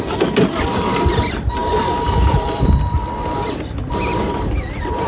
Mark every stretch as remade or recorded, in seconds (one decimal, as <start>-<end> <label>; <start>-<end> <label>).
0.0-5.1 recorded